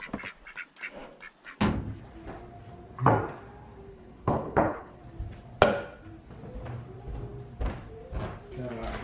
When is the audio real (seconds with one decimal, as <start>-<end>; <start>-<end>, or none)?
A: 0.0-3.9; 5.0-9.0